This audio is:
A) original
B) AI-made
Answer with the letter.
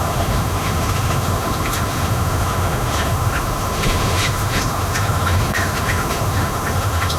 B